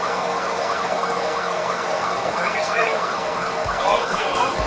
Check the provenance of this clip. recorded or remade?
remade